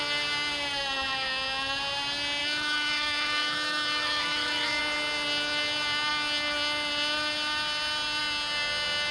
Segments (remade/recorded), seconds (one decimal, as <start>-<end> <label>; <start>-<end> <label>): 0.0-0.7 recorded; 0.7-1.8 remade; 1.8-2.4 recorded; 2.4-4.8 remade; 4.8-9.1 recorded